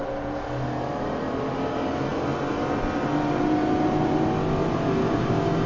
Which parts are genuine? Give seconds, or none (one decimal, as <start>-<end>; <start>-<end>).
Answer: 0.0-5.0